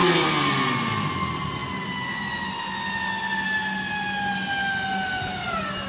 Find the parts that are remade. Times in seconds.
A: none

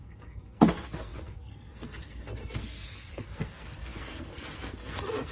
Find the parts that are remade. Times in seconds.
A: 0.0-5.3 (codec, SNAC)

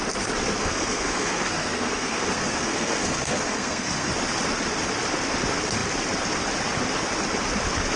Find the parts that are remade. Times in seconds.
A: 0.6-4.1 (codec, SNAC)